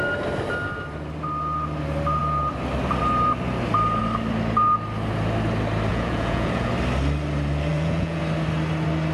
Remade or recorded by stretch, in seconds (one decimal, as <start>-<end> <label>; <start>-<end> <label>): 0.0-5.9 recorded; 5.9-6.7 remade; 6.7-7.7 recorded; 7.7-8.2 remade; 8.2-9.1 recorded